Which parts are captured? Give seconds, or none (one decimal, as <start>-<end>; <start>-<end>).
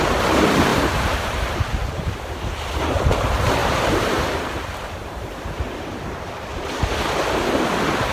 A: 0.0-0.7; 2.3-3.6; 5.4-6.5; 7.1-8.1